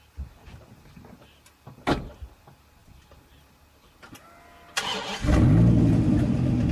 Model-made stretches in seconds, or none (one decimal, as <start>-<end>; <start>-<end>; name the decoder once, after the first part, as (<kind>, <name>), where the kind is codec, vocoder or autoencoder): none

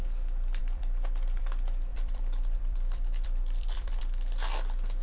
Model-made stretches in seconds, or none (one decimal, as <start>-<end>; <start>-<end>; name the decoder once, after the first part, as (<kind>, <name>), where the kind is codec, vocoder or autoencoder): 0.6-1.4 (vocoder, BigVGAN v2); 1.9-4.0